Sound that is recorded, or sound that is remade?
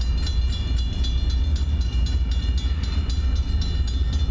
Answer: recorded